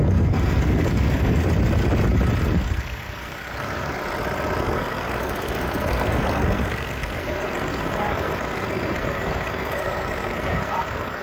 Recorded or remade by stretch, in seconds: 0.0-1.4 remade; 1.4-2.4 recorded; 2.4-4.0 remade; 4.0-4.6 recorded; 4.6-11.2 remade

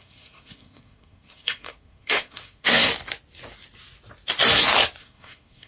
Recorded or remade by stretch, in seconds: 0.0-2.9 remade; 2.9-5.0 recorded; 5.0-5.7 remade

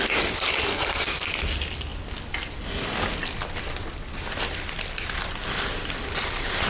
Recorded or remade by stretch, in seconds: 0.0-0.7 recorded; 0.7-1.3 remade; 1.3-6.7 recorded